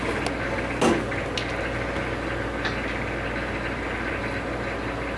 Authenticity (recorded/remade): recorded